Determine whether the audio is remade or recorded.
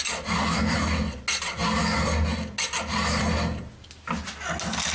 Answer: recorded